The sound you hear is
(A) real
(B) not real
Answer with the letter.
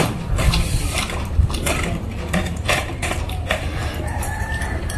B